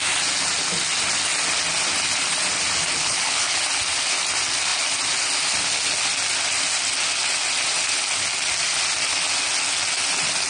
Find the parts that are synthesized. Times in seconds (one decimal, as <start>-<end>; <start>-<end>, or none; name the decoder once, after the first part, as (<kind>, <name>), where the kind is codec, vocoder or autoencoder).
3.0-3.6 (codec, HILCodec)